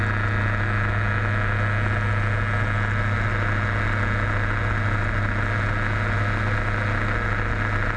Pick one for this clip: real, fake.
real